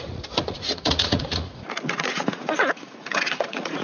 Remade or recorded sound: remade